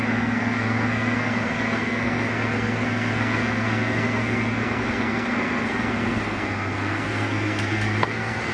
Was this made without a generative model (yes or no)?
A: no